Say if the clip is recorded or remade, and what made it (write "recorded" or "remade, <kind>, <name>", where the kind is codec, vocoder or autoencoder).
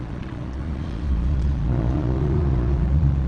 remade, vocoder, Vocos